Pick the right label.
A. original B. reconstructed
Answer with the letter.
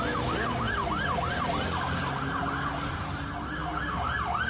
A